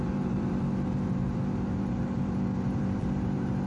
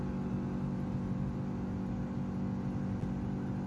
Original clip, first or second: second